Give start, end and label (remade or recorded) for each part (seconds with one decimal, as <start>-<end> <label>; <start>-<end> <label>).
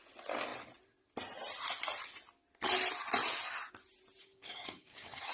0.0-4.2 recorded; 4.2-5.3 remade